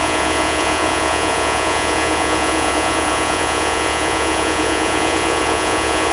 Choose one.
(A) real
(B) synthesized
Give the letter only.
B